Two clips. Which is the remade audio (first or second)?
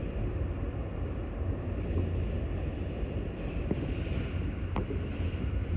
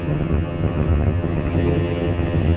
second